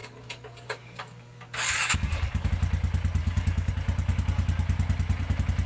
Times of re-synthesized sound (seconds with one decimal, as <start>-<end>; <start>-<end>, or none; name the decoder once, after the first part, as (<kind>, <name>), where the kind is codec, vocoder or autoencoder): 0.0-2.5 (codec, DAC); 3.2-3.7